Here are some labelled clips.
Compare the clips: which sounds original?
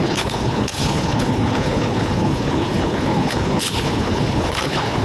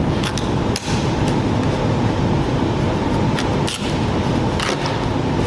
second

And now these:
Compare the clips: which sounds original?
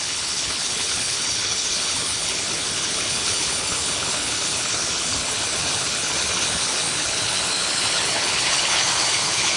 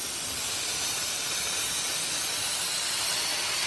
second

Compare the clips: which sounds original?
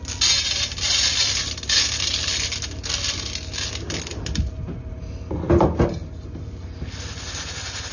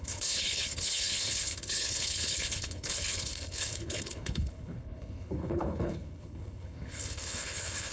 first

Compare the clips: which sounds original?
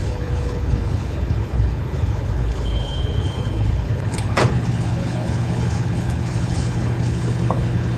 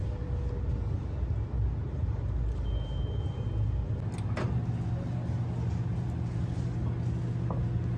second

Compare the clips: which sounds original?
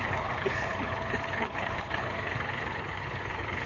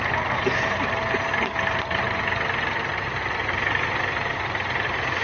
second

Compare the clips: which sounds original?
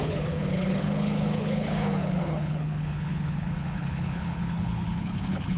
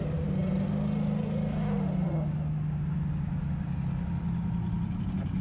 second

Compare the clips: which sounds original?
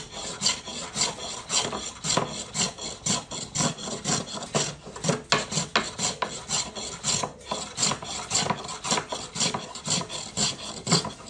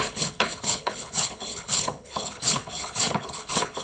first